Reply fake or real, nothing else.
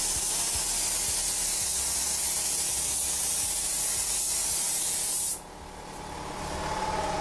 real